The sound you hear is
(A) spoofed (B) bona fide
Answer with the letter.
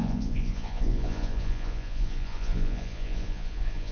A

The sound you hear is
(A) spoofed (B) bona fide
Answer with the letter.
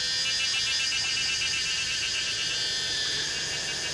B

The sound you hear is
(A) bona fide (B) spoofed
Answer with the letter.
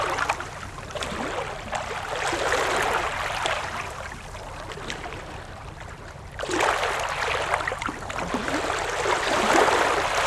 A